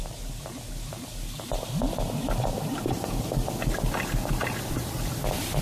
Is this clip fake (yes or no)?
no